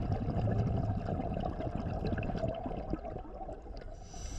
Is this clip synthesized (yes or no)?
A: no